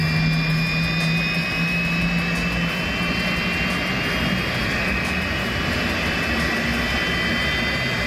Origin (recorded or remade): recorded